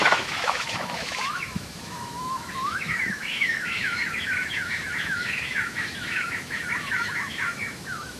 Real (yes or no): no